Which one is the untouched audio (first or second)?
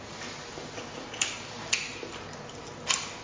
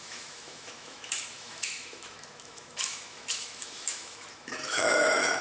first